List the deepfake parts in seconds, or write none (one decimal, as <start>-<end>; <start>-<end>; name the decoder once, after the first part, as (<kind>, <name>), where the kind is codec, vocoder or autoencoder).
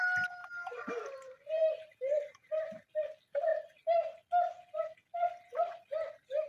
0.4-2.6 (vocoder, BigVGAN v2)